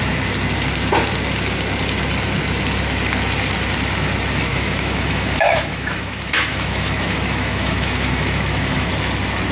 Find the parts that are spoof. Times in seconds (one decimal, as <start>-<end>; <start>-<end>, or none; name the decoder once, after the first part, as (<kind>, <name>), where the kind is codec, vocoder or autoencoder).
4.5-8.9 (autoencoder, DAC-VAE)